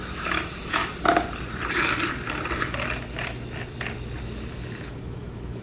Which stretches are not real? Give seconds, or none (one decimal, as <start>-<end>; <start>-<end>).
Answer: 0.0-0.8; 4.2-5.6